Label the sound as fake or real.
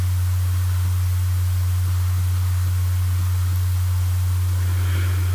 real